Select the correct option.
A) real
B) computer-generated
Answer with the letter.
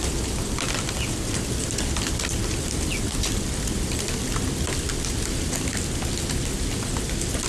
A